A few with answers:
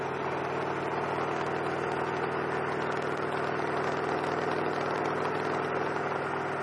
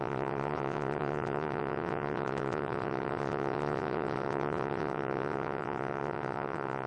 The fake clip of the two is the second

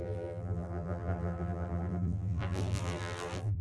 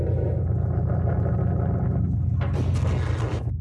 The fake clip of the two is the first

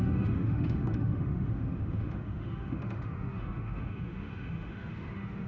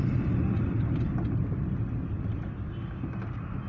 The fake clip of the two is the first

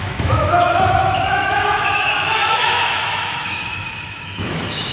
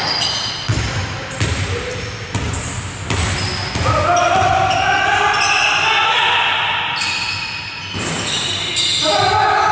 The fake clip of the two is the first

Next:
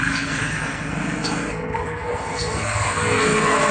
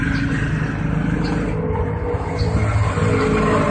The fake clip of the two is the first